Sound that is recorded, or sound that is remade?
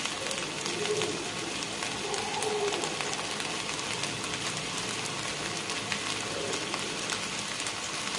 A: recorded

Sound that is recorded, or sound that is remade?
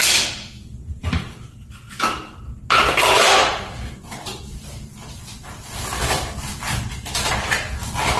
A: recorded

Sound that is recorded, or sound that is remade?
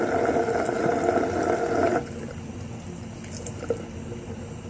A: recorded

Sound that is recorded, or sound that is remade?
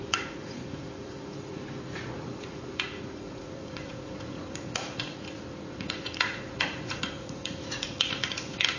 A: remade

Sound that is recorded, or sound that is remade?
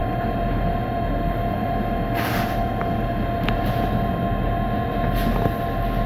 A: recorded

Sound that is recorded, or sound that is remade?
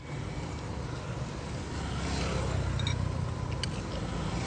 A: recorded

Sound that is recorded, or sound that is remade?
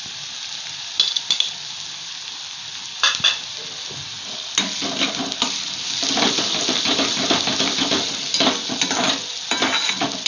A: recorded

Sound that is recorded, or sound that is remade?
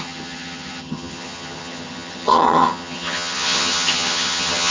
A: remade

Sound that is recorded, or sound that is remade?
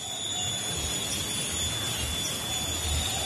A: recorded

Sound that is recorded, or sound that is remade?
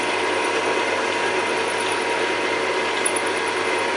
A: recorded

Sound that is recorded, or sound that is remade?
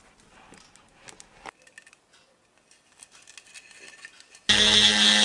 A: recorded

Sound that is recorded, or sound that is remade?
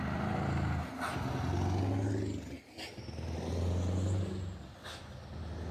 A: recorded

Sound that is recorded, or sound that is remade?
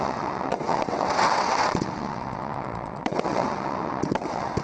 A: remade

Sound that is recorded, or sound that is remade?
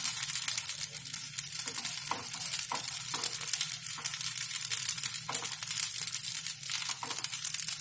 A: recorded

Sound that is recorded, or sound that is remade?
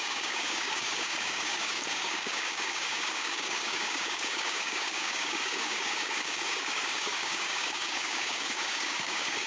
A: remade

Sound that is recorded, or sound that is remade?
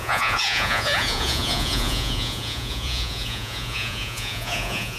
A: remade